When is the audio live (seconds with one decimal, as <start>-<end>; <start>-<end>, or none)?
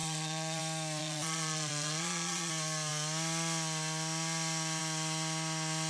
0.6-1.0; 2.5-5.9